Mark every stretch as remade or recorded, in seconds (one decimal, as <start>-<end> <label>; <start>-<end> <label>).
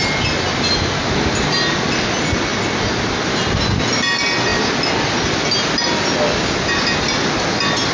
0.0-7.9 recorded